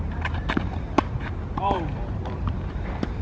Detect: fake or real fake